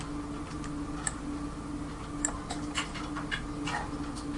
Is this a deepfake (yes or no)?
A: no